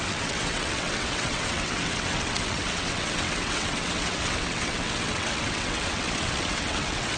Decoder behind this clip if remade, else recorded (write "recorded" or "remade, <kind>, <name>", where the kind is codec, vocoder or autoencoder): remade, vocoder, WaveNeXt